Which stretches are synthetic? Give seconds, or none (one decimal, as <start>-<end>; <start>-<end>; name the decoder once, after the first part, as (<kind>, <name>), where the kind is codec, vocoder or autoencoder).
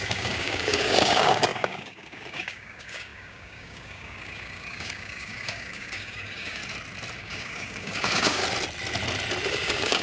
0.0-6.6 (codec, DAC); 7.2-8.4; 9.5-10.0